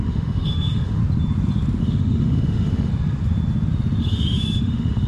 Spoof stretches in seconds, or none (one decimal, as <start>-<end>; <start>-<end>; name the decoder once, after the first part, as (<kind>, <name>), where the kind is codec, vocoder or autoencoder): 0.0-1.0 (autoencoder, DAC-VAE); 1.8-2.9; 4.0-5.1